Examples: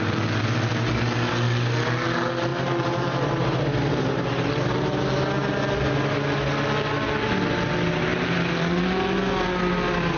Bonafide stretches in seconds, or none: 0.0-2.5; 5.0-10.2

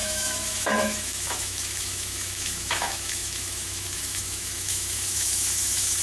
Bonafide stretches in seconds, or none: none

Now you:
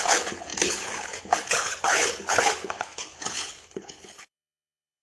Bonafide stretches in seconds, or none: none

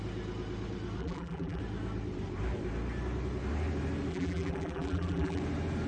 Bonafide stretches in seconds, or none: 0.0-1.0; 1.6-4.1; 5.4-5.9

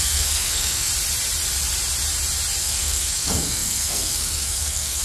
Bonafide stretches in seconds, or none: 0.9-2.6